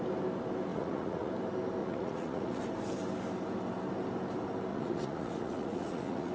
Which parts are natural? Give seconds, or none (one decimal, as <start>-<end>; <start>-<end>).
0.0-0.7; 1.3-1.8; 2.6-4.7